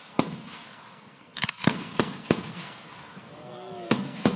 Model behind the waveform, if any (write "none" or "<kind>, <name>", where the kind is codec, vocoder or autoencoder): codec, SNAC